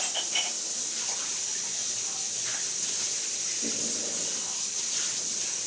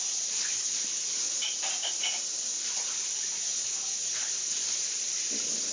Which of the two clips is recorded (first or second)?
first